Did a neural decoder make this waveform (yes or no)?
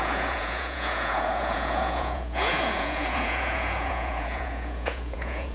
yes